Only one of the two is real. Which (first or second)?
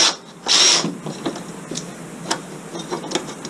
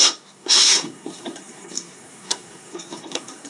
first